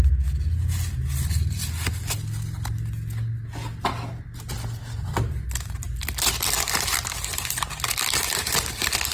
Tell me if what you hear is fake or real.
real